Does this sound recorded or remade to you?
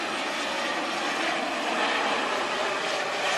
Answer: recorded